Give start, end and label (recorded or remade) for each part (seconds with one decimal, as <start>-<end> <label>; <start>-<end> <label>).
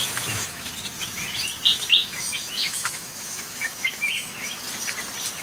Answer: 0.0-0.7 remade; 0.7-1.7 recorded; 1.7-4.6 remade; 4.6-5.4 recorded